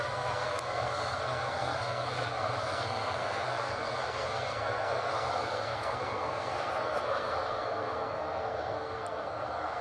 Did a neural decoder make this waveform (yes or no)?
yes